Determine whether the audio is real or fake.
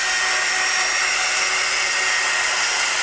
real